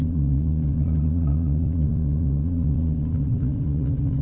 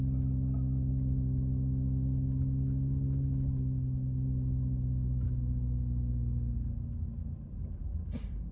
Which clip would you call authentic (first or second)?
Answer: second